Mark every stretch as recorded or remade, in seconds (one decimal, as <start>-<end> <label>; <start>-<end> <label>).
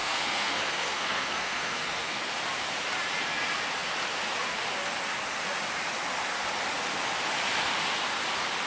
0.0-2.3 remade; 2.3-8.7 recorded